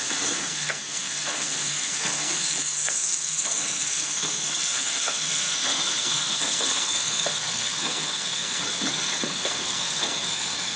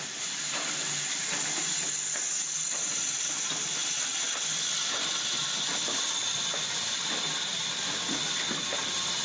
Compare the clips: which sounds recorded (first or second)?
second